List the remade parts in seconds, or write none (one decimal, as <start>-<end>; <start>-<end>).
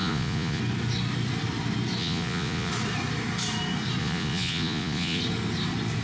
0.0-0.6; 2.0-2.7; 4.0-5.2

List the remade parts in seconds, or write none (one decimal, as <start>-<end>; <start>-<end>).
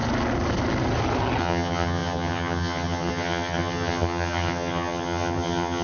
1.4-5.8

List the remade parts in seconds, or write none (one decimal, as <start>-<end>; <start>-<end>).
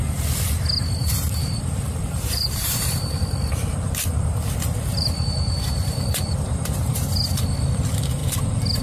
1.0-3.2; 4.9-7.3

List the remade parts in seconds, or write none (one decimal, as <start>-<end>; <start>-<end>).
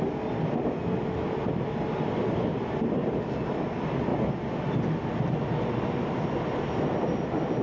none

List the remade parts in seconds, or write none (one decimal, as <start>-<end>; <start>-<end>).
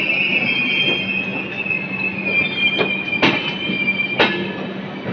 none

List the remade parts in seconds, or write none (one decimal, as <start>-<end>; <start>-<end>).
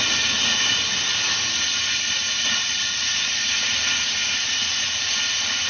none